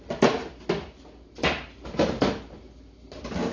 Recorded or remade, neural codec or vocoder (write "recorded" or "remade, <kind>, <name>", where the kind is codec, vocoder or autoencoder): recorded